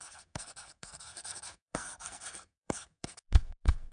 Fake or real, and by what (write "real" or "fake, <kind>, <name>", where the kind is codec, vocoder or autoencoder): fake, codec, SNAC